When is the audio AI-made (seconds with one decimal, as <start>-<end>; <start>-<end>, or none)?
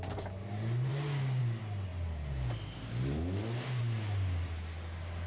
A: 0.9-1.4